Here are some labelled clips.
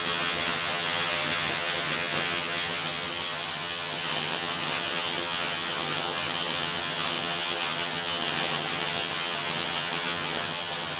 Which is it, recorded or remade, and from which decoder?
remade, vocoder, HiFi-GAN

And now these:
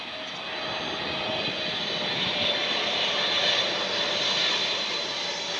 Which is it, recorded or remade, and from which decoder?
recorded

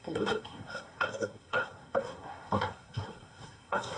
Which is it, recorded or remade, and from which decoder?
remade, codec, SNAC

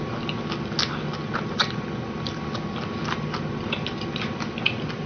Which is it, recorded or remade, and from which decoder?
recorded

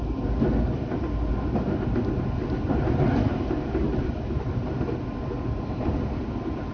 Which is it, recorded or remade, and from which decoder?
recorded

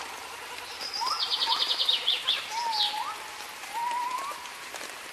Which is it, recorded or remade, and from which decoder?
recorded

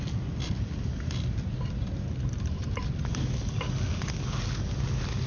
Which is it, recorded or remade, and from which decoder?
recorded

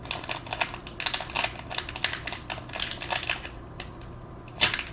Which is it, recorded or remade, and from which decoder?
recorded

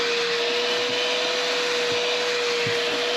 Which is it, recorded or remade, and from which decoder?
recorded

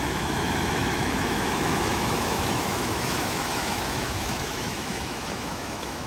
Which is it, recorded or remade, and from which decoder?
remade, autoencoder, DAC-VAE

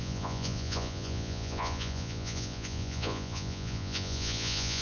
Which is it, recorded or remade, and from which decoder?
remade, vocoder, Vocos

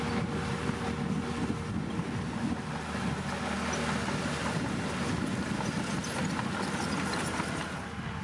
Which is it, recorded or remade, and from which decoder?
recorded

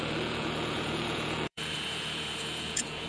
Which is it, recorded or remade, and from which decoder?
remade, vocoder, Vocos